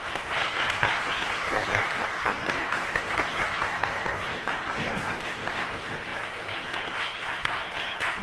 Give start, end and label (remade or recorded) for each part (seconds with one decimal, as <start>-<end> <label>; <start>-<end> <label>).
0.0-8.2 remade